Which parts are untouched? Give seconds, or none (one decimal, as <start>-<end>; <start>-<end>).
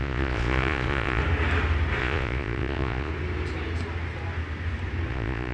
1.2-2.0; 3.1-5.1